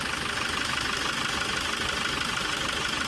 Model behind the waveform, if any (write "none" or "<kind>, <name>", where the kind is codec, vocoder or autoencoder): none